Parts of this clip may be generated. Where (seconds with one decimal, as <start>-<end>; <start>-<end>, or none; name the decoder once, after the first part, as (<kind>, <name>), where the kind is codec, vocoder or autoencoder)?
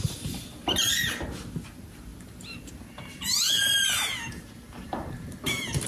0.0-5.9 (vocoder, BigVGAN v2)